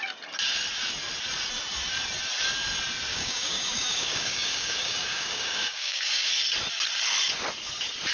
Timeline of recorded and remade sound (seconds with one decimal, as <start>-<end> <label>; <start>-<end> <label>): 0.0-3.1 recorded; 3.1-6.4 remade; 6.4-8.1 recorded